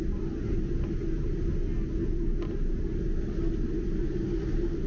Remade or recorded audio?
recorded